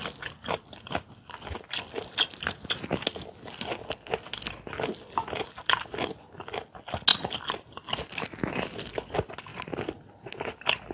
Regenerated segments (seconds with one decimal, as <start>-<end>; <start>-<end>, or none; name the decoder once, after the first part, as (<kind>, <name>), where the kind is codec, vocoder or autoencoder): none